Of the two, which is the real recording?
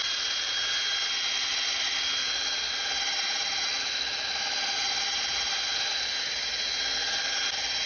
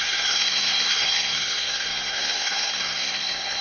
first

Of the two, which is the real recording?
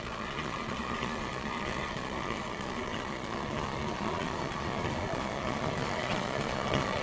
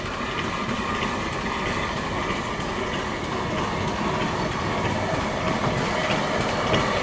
second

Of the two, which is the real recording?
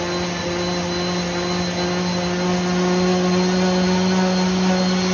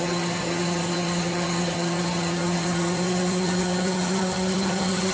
first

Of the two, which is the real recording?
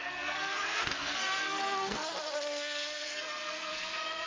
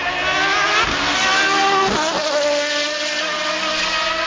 second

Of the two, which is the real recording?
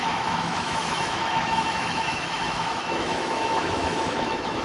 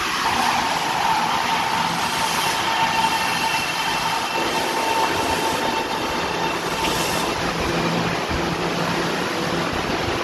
second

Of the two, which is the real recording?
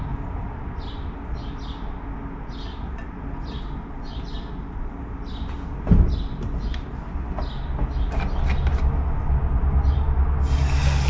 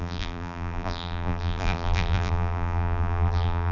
first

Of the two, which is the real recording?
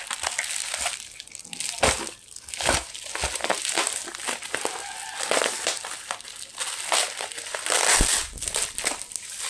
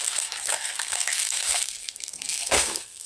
first